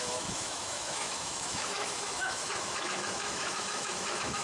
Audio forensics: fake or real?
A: fake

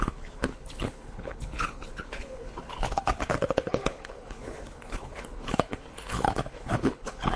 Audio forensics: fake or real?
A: fake